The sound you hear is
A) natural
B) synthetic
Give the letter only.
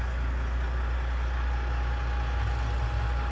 A